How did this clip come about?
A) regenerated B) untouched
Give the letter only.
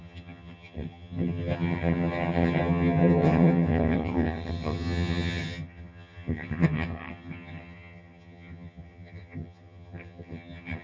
A